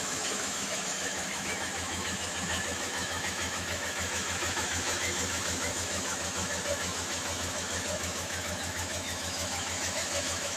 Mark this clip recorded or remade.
remade